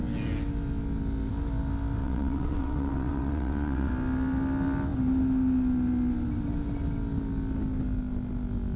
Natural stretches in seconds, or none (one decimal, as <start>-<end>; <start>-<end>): 0.0-2.0; 3.9-8.8